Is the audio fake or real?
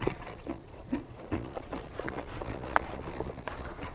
fake